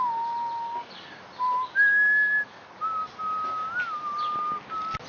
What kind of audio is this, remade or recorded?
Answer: recorded